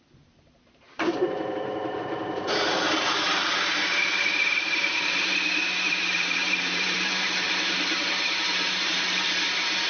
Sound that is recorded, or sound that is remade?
remade